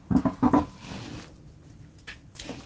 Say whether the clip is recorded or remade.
recorded